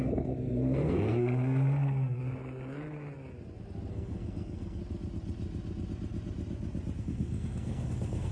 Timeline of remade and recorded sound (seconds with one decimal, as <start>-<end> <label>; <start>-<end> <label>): 0.0-2.2 remade; 2.2-3.9 recorded; 3.9-4.8 remade; 4.8-7.0 recorded; 7.0-8.3 remade